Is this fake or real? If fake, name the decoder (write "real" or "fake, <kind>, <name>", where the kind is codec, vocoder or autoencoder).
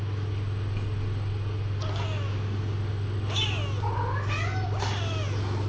real